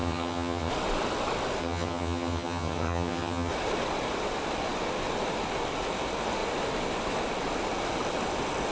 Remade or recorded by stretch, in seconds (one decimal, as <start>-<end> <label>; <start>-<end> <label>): 0.0-0.7 remade; 0.7-1.6 recorded; 1.6-3.5 remade; 3.5-8.7 recorded